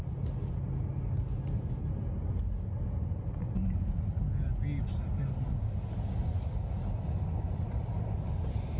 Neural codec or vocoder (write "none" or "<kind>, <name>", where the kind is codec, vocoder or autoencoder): none